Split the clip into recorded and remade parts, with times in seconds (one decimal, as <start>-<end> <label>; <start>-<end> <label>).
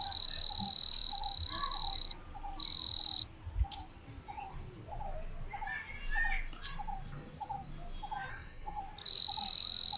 0.0-8.3 recorded; 8.3-8.8 remade; 8.8-10.0 recorded